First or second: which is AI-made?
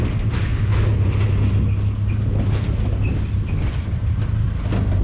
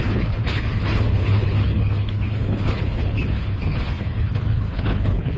second